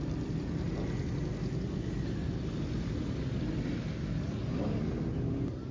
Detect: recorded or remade recorded